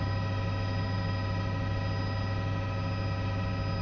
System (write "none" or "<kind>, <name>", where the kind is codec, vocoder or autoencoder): none